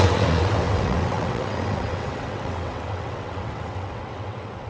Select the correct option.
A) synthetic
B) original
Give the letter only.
A